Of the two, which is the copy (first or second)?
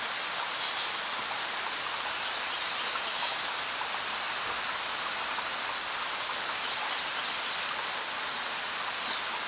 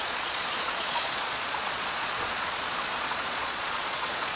second